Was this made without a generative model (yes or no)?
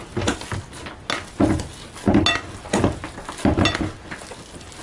yes